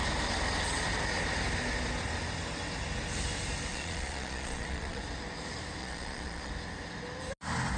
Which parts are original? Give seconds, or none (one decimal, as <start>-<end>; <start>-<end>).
0.0-3.7; 5.0-5.8; 6.5-7.8